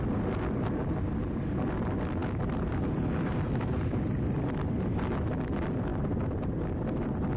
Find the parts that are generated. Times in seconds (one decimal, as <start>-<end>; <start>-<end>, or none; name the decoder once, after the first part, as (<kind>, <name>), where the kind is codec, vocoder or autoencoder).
5.9-6.5 (vocoder, BigVGAN v2)